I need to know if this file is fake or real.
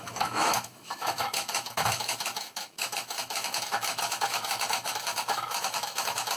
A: fake